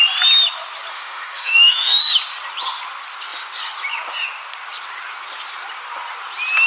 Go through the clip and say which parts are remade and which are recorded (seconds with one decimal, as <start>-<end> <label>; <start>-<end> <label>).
0.0-0.9 recorded; 0.9-2.1 remade; 2.1-6.7 recorded